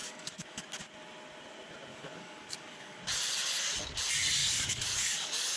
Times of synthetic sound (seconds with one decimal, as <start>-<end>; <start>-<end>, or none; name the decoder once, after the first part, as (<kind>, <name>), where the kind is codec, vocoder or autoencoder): 0.0-0.6 (codec, DAC); 1.9-3.0; 4.4-5.6